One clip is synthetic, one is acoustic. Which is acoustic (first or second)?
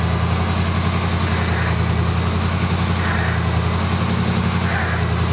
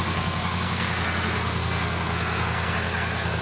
first